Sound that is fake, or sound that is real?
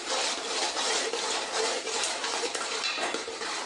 fake